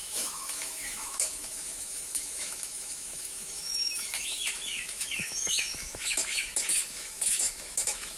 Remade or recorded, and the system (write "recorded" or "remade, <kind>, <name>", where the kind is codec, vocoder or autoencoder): remade, autoencoder, DAC-VAE